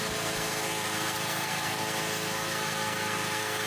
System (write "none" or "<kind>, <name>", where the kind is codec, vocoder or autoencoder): codec, SNAC